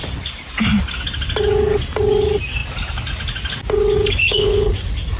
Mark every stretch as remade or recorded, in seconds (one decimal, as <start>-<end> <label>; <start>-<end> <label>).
0.0-4.2 recorded; 4.2-4.7 remade; 4.7-5.2 recorded